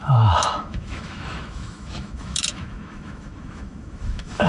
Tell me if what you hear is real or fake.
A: fake